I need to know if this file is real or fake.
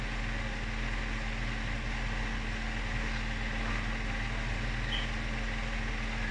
real